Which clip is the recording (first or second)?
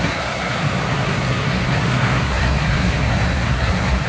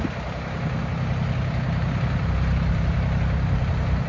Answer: second